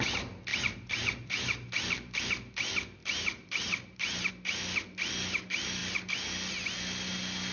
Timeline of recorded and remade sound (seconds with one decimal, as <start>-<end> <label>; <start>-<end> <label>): 0.0-0.5 recorded; 0.5-2.2 remade; 2.2-3.0 recorded; 3.0-4.3 remade; 4.3-7.5 recorded